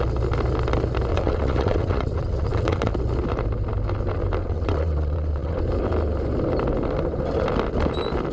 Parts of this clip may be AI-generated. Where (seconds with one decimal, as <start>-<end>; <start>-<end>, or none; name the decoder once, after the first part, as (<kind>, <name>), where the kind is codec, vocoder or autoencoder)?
1.1-2.9 (vocoder, WaveNeXt); 4.4-5.6

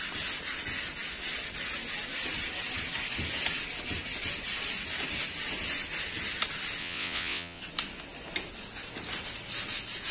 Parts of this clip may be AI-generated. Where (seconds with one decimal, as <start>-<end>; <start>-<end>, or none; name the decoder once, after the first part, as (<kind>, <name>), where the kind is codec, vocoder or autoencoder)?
6.8-7.6 (vocoder, WaveNeXt)

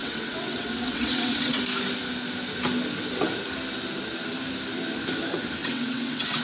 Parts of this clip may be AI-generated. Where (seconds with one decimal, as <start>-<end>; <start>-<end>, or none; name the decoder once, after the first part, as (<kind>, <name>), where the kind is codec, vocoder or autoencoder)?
0.0-1.6 (vocoder, WaveNeXt); 5.6-6.4